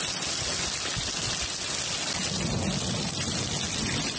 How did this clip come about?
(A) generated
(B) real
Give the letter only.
B